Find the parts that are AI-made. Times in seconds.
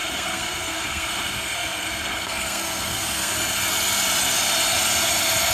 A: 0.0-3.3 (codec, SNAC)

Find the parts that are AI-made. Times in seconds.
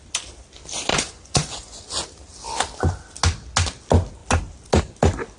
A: 0.9-1.8 (vocoder, Vocos)